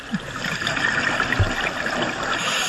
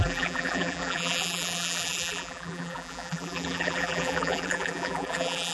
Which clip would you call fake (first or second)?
second